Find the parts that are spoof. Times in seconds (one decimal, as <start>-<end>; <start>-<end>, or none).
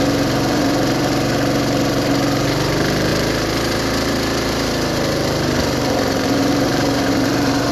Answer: 0.0-7.7